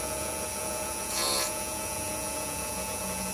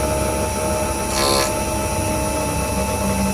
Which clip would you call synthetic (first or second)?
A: first